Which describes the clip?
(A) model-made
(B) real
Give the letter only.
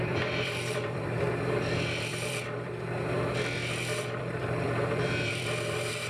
A